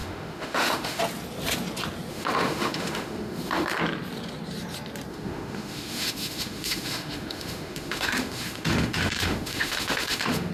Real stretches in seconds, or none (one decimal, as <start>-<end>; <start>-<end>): 1.0-2.1; 3.8-5.1